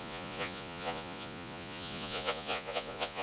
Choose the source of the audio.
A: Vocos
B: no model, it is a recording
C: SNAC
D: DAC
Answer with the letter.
A